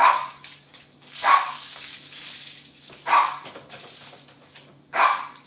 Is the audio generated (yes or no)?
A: yes